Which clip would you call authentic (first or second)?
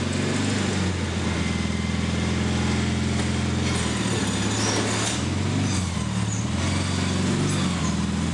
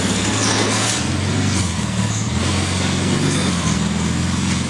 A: first